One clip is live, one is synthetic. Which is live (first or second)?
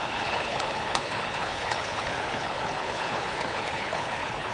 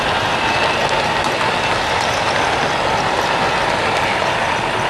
second